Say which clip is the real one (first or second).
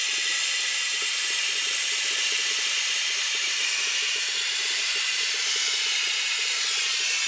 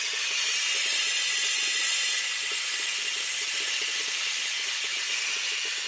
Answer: second